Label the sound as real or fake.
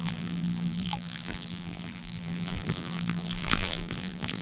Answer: fake